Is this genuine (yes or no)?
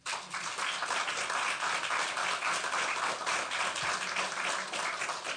yes